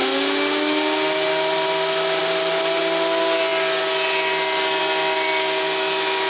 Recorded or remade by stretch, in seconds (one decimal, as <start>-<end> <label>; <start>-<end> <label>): 0.0-2.2 recorded; 2.2-2.8 remade; 2.8-6.3 recorded